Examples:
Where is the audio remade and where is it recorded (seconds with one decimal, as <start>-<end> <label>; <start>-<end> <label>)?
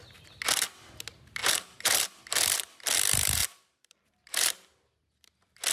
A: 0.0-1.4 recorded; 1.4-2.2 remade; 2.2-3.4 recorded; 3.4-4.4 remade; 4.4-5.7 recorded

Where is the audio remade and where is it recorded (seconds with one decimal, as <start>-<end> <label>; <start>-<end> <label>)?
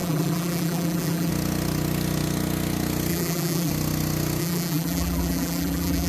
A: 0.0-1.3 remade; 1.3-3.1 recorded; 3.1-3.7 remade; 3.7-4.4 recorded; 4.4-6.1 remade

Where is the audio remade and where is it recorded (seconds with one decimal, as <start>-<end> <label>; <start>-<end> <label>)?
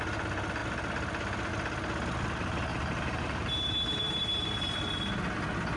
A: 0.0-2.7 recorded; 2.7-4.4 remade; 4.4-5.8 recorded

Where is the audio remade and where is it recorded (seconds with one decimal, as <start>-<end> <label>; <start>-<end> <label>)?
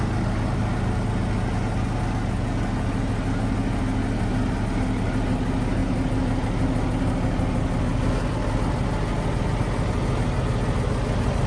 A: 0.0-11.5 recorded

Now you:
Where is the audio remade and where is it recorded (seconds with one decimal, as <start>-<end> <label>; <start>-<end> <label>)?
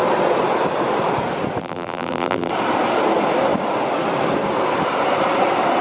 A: 0.0-1.6 recorded; 1.6-2.5 remade; 2.5-5.8 recorded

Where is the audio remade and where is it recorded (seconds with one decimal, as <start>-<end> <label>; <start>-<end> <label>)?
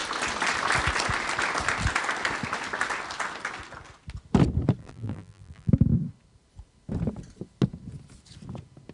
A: 0.0-4.8 recorded; 4.8-5.7 remade; 5.7-8.9 recorded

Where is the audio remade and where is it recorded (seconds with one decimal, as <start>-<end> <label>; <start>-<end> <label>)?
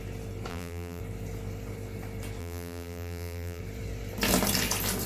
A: 0.0-0.5 recorded; 0.5-1.0 remade; 1.0-2.4 recorded; 2.4-3.6 remade; 3.6-5.1 recorded